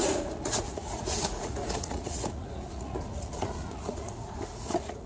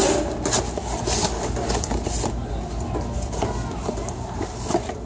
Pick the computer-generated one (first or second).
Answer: first